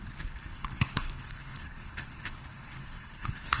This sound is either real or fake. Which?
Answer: fake